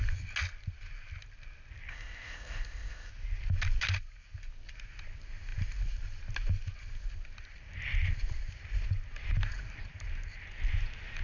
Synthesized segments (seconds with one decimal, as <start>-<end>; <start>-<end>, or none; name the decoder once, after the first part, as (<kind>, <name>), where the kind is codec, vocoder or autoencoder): 1.9-3.1 (codec, ZipCodec)